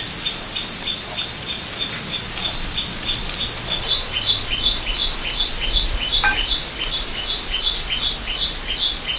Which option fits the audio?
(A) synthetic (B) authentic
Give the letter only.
B